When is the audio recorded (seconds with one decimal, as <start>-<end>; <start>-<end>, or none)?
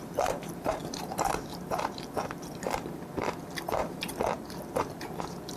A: none